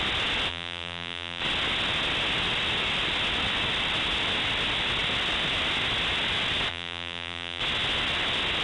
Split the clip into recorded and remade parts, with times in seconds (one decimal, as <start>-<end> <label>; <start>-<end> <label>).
0.0-0.5 recorded; 0.5-1.4 remade; 1.4-6.7 recorded; 6.7-7.6 remade; 7.6-8.6 recorded